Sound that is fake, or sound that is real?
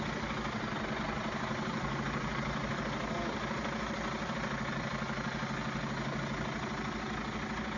real